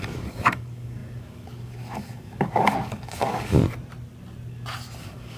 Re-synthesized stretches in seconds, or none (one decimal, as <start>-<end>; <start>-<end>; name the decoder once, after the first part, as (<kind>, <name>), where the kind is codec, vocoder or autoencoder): 0.0-3.6 (codec, DAC); 5.0-5.4